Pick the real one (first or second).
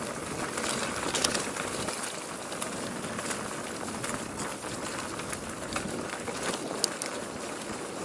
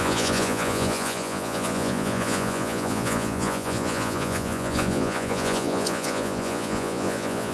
first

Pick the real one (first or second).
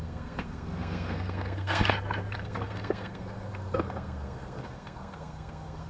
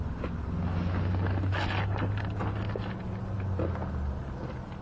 second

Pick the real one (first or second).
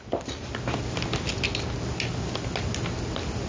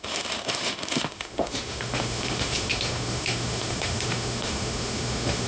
first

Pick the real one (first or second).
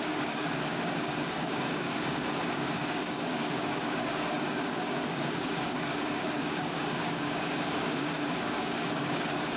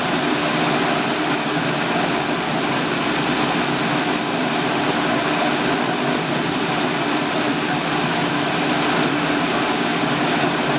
second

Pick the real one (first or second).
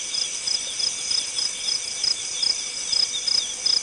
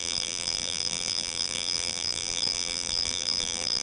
first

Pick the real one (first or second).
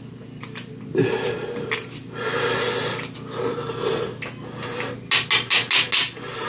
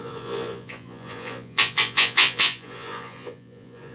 first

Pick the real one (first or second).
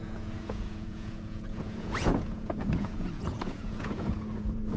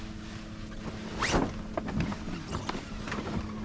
second